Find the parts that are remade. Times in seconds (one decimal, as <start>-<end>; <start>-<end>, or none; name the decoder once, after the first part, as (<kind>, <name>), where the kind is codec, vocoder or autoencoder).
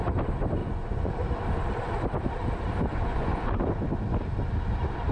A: 0.6-1.1 (vocoder, Vocos); 2.9-3.5